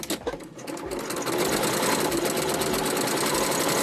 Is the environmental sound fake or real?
real